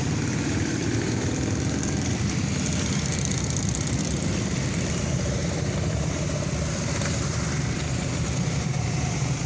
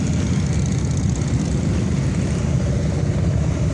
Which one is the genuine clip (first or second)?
second